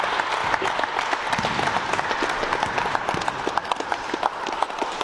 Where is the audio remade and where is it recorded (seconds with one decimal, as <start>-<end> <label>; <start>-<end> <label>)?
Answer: 0.0-3.9 recorded; 3.9-5.0 remade